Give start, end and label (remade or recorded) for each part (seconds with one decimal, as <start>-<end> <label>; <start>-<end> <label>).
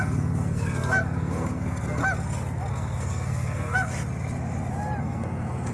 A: 0.0-2.0 remade; 2.0-2.7 recorded; 2.7-3.9 remade; 3.9-5.0 recorded; 5.0-5.7 remade